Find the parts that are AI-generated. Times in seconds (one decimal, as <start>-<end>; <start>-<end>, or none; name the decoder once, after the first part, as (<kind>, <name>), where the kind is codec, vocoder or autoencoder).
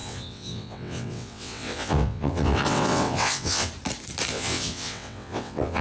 0.0-3.7 (vocoder, WaveNeXt); 4.3-5.8